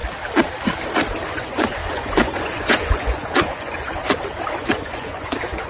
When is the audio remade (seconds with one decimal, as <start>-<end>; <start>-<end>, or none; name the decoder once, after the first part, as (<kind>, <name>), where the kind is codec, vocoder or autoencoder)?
1.3-4.0 (vocoder, Vocos); 4.6-5.7